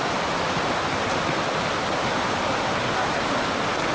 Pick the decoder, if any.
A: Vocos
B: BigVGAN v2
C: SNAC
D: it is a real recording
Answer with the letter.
D